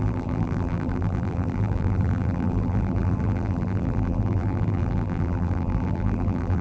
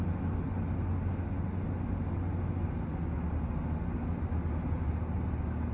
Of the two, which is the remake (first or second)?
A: first